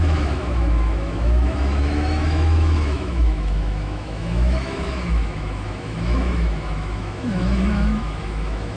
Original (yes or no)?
no